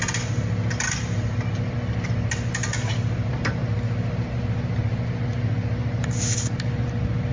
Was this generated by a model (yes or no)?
no